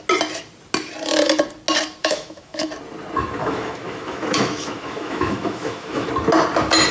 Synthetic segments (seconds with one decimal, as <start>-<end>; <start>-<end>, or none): 2.0-2.7; 3.4-6.1